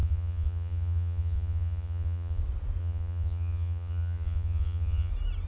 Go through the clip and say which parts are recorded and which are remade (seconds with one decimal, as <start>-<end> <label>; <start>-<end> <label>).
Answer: 0.0-2.4 remade; 2.4-2.8 recorded; 2.8-5.1 remade; 5.1-5.5 recorded